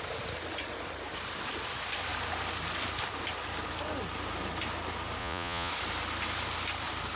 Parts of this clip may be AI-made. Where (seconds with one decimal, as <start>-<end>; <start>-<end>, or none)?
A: 5.2-5.7